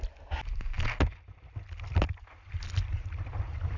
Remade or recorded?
recorded